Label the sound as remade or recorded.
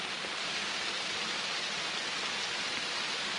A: remade